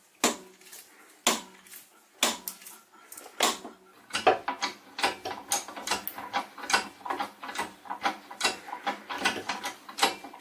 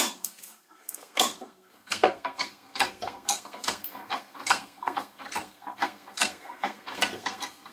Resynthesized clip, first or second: second